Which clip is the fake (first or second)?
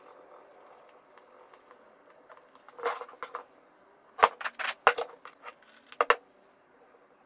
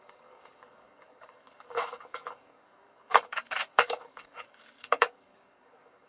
second